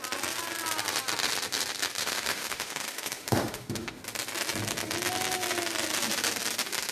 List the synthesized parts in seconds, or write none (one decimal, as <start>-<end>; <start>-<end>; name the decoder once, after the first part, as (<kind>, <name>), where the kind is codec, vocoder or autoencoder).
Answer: 2.0-4.0 (autoencoder, DAC-VAE)